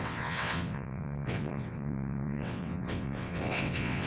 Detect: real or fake fake